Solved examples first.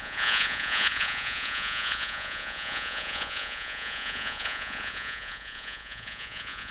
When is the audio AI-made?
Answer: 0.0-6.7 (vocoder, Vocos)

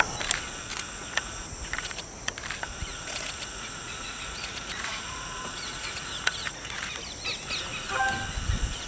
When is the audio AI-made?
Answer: 0.7-2.3 (vocoder, Vocos); 2.9-7.0

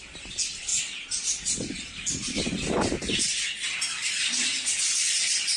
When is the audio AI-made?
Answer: none

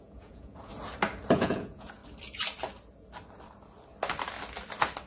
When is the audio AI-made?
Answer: 0.0-0.7 (vocoder, Vocos); 1.3-2.0

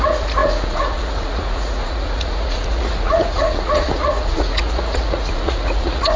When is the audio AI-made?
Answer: 0.0-6.2 (vocoder, Vocos)

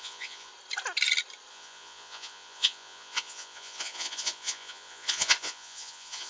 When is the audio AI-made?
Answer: 0.0-0.5 (vocoder, Vocos); 1.5-6.3

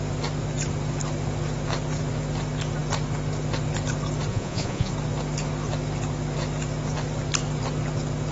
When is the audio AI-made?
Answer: 4.3-4.9 (vocoder, Vocos)

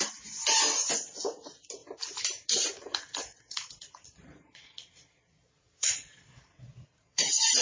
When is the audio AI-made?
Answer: 3.3-7.6 (vocoder, Vocos)